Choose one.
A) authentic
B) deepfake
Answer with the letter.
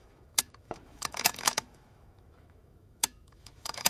B